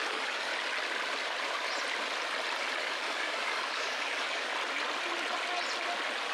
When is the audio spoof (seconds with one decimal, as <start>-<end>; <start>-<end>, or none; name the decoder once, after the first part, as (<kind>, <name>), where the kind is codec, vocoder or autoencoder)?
0.0-0.5 (codec, DAC); 2.8-4.5